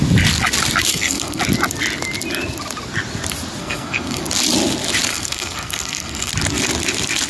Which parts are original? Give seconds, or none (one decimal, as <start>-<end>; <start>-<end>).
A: 0.0-0.9; 1.4-3.6; 4.2-5.1; 6.3-7.3